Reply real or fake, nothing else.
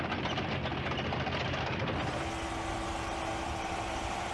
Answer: real